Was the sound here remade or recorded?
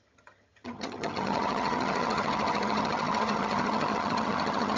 remade